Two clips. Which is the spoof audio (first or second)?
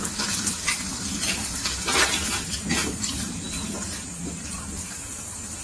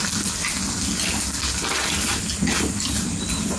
first